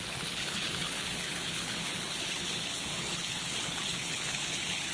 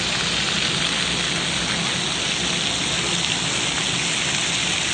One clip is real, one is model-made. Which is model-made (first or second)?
first